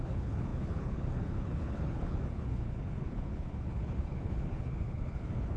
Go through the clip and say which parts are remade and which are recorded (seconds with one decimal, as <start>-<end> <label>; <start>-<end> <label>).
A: 0.0-5.6 remade